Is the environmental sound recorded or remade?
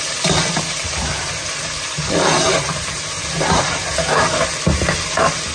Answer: recorded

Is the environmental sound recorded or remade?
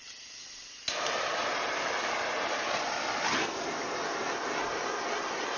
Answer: recorded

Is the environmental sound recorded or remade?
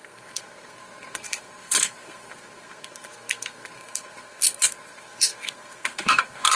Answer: remade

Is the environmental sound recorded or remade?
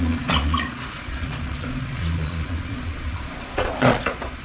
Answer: remade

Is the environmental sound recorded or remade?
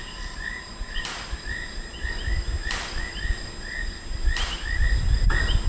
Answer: recorded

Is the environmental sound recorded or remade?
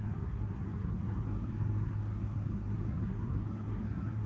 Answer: remade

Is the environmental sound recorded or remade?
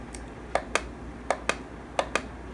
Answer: recorded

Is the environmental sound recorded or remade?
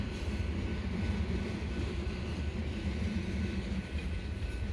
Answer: recorded